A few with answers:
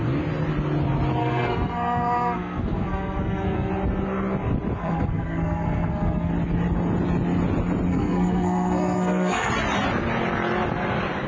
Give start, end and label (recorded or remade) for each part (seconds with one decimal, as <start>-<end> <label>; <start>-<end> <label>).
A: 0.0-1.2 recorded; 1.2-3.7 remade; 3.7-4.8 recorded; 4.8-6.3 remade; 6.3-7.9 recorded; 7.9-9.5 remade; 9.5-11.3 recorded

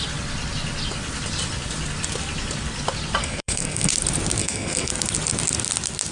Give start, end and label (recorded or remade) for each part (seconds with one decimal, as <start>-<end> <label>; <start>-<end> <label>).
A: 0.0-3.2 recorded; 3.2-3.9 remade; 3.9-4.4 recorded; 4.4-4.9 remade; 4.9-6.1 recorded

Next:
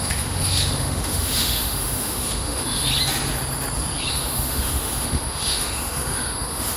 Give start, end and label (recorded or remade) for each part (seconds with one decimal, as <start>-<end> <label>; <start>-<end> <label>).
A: 0.0-2.9 remade; 2.9-4.1 recorded; 4.1-6.8 remade

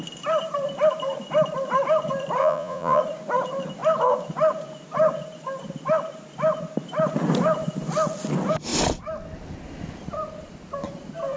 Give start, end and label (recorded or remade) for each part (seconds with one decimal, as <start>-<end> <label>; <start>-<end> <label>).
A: 0.0-2.4 recorded; 2.4-3.0 remade; 3.0-11.4 recorded

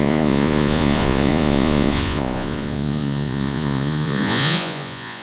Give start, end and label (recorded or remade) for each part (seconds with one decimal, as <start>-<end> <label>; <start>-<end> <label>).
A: 0.0-5.2 remade

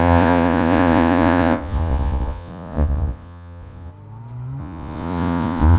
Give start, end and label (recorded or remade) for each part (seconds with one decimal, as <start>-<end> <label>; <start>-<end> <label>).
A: 0.0-3.9 remade; 3.9-4.6 recorded; 4.6-5.8 remade